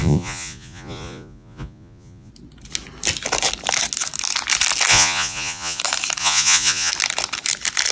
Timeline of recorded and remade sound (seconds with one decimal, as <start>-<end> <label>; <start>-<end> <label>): 0.0-2.3 remade; 2.3-4.9 recorded; 4.9-5.8 remade; 5.8-6.2 recorded; 6.2-6.9 remade; 6.9-7.9 recorded